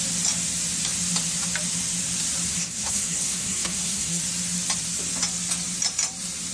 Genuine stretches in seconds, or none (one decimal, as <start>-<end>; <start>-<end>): 0.0-2.5; 4.2-6.5